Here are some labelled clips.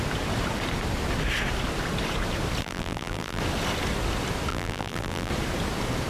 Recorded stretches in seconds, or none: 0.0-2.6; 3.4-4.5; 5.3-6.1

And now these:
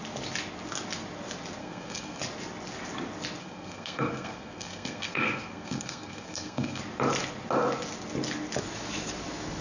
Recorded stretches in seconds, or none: 0.0-1.6; 2.2-3.4; 6.8-9.6

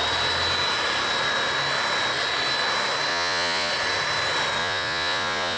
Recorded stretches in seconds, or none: 0.0-3.1; 3.7-4.6